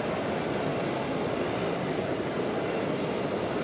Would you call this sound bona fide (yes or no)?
no